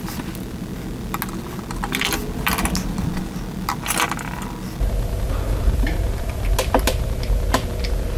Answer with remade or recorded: recorded